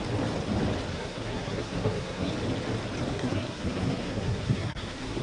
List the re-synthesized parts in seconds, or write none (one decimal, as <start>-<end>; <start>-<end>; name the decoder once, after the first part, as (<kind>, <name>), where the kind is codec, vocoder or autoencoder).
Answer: 0.9-2.3 (codec, SNAC); 3.1-5.2